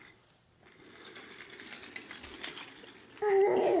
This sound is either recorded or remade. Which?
recorded